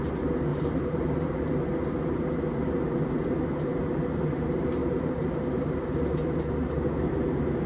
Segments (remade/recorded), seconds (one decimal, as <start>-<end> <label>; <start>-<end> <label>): 0.0-0.5 recorded; 0.5-1.5 remade; 1.5-4.8 recorded; 4.8-5.6 remade; 5.6-7.7 recorded